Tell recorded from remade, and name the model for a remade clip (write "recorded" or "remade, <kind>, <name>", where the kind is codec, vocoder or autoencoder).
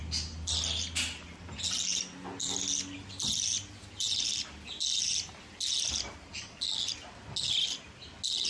recorded